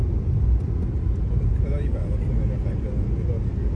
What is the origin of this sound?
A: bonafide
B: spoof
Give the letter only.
A